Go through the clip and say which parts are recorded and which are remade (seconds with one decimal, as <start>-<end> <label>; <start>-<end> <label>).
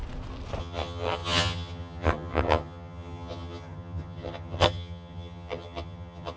0.0-0.6 recorded; 0.6-6.4 remade